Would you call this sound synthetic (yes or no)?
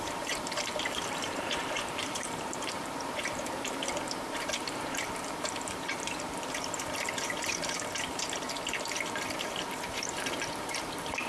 yes